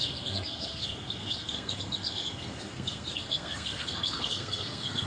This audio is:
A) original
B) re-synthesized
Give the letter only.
B